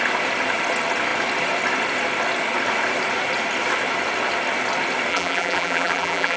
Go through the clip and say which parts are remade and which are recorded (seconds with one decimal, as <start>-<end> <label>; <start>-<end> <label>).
0.0-5.1 recorded; 5.1-6.4 remade